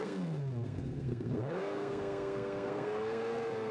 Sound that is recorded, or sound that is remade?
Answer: remade